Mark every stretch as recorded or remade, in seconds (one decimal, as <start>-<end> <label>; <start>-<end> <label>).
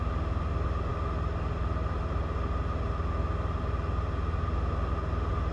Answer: 0.0-5.5 recorded